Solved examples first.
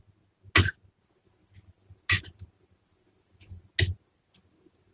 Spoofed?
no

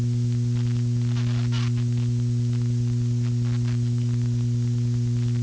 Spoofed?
no